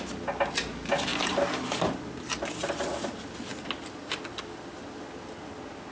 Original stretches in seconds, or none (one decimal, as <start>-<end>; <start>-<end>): 0.0-5.9